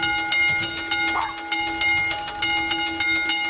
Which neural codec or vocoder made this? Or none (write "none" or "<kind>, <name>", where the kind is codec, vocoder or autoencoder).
none